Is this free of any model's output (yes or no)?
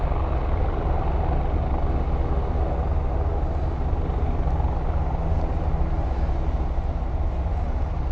yes